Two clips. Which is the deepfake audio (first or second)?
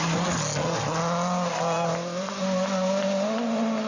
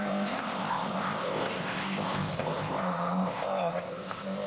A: second